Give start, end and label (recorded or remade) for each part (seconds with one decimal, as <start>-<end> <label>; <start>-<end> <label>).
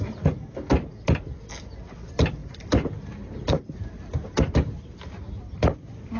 0.0-6.2 recorded